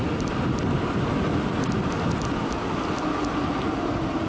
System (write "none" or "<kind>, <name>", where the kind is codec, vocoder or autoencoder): none